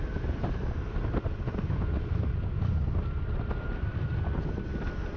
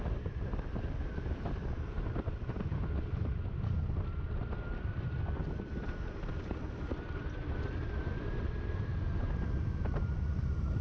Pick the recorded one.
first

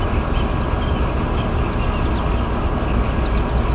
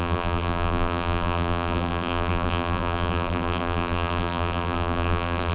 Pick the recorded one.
first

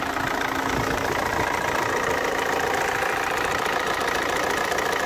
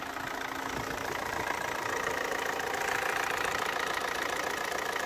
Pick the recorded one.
second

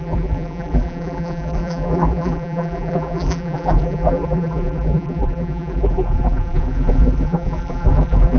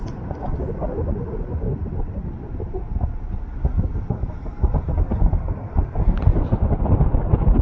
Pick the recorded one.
second